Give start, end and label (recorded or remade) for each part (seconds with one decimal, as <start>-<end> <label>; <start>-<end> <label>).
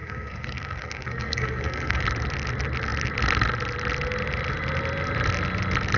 0.0-2.0 remade; 2.0-6.0 recorded